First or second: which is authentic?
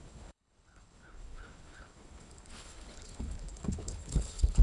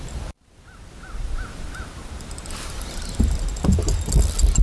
second